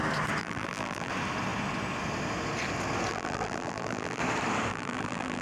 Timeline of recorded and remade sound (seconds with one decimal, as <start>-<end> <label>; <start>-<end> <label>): 0.0-0.4 recorded; 0.4-1.1 remade; 1.1-3.1 recorded; 3.1-4.2 remade; 4.2-4.7 recorded; 4.7-5.4 remade